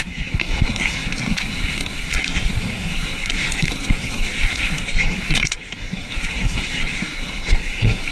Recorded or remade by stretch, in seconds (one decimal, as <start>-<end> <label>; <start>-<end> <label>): 0.0-8.1 remade